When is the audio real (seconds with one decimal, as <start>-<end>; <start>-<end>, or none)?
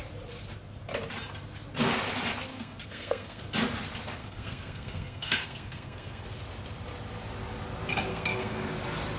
0.0-2.5; 3.4-4.2; 6.2-8.1; 8.7-9.2